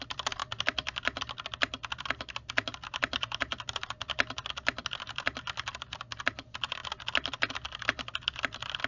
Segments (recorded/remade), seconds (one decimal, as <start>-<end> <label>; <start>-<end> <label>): 0.0-8.9 recorded